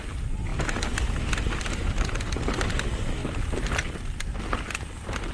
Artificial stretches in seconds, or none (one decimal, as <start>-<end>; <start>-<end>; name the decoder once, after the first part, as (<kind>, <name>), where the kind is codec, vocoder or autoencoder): none